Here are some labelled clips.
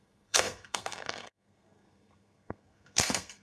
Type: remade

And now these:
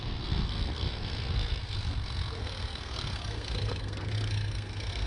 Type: remade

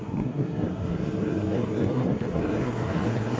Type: remade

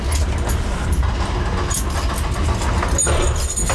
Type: recorded